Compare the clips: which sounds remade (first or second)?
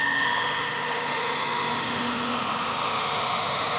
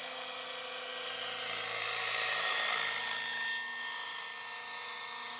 first